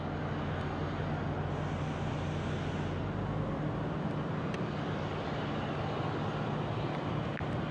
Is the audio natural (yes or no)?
yes